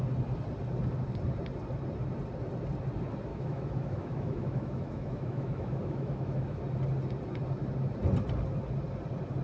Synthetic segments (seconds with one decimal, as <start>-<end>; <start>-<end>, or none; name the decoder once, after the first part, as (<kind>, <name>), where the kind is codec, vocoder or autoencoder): 3.3-6.6 (autoencoder, DAC-VAE)